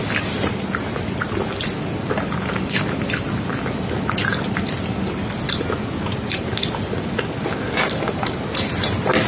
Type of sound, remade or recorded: recorded